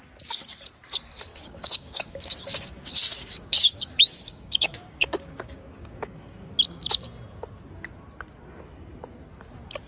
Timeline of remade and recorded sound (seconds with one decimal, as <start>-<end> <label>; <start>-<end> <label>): 0.0-1.3 recorded; 1.3-6.5 remade; 6.5-9.9 recorded